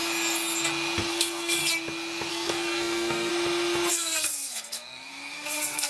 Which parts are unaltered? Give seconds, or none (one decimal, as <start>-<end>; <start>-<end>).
0.0-1.1; 1.6-2.3; 3.3-3.9